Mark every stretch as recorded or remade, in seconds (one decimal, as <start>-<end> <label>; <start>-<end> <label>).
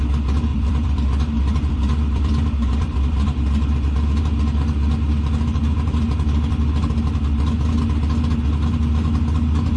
0.0-0.5 recorded; 0.5-4.2 remade; 4.2-9.8 recorded